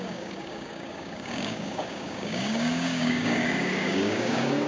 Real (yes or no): no